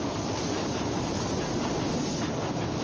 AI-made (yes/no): no